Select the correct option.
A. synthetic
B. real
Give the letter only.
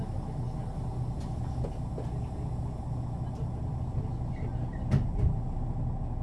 B